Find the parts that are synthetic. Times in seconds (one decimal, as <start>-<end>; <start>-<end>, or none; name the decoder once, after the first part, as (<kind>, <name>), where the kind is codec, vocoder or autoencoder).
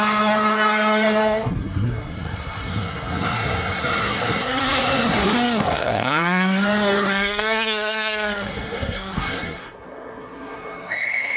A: 0.0-11.4 (codec, SNAC)